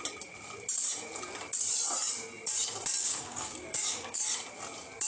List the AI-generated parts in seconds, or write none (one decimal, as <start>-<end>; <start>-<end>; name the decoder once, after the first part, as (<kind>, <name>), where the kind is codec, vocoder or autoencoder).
3.0-4.2 (codec, DAC)